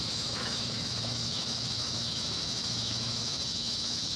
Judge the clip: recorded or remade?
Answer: remade